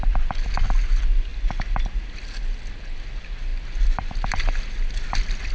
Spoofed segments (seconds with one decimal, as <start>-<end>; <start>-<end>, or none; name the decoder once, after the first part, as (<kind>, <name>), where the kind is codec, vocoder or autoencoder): none